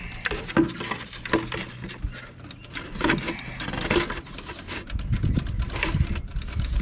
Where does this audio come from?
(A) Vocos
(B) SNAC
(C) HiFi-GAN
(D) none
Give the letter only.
D